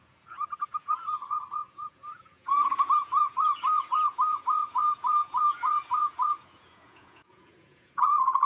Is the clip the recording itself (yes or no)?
no